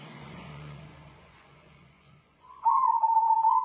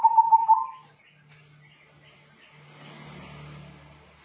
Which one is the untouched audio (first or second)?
second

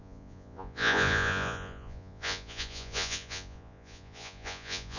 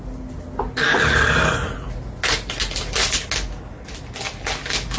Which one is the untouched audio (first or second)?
second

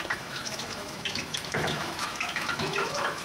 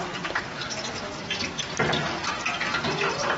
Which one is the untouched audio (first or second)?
second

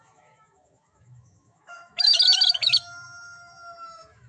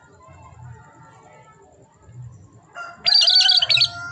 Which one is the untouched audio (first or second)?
second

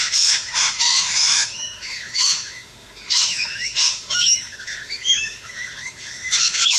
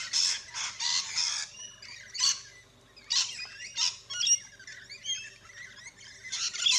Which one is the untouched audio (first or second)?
second